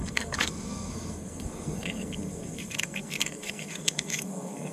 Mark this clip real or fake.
fake